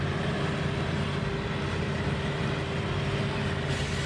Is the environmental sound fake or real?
real